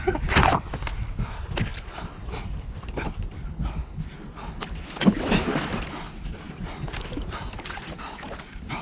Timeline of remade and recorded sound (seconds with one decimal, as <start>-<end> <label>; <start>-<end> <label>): 0.0-1.7 remade; 1.7-2.8 recorded; 2.8-3.8 remade; 3.8-6.7 recorded; 6.7-8.8 remade